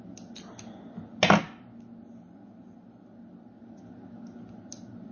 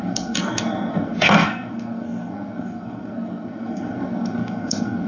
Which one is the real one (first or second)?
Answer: first